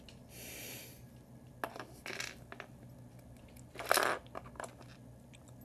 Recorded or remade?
recorded